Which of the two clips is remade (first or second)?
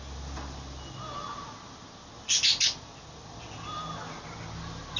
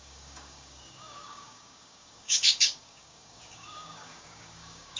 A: second